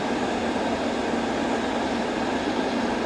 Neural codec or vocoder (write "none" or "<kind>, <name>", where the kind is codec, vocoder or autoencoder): none